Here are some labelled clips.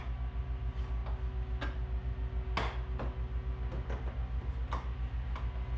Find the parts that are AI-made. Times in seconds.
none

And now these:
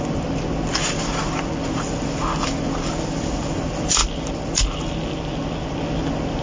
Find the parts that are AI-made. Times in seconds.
none

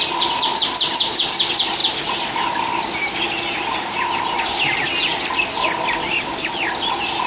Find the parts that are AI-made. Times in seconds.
none

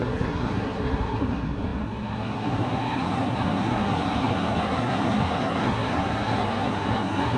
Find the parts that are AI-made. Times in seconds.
0.0-7.4 (codec, SNAC)

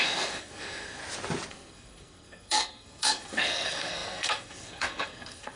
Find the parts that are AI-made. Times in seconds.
0.0-1.0 (codec, SNAC); 1.5-5.6

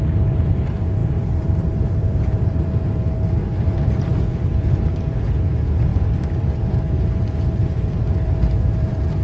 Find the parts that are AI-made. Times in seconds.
0.0-9.2 (vocoder, BigVGAN v2)

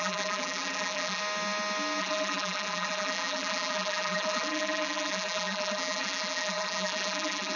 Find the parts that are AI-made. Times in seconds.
0.0-1.2 (vocoder, BigVGAN v2); 2.0-7.6

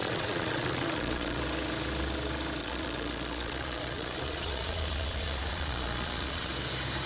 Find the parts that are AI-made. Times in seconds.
0.0-1.4 (vocoder, Vocos); 2.6-6.5